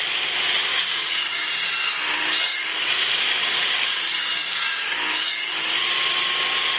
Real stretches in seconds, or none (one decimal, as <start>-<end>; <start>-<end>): 0.0-0.7; 1.5-2.5; 5.6-6.8